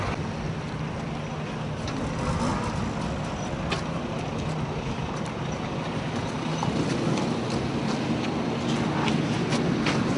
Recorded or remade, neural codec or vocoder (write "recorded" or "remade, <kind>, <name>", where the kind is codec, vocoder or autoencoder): recorded